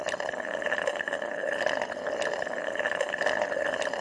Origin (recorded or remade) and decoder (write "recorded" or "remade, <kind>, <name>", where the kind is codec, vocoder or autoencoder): recorded